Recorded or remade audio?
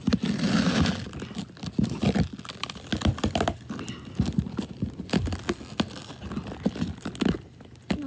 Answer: recorded